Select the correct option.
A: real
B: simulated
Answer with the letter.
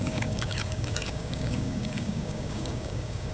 B